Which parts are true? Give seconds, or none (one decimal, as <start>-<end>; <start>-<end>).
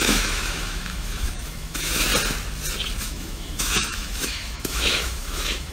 2.1-3.0